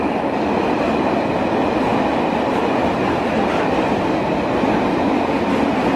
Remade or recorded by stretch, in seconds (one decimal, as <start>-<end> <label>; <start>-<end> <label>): 0.0-6.0 recorded